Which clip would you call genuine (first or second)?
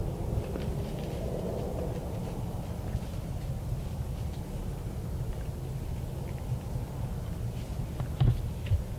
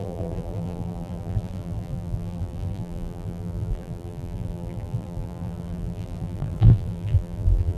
first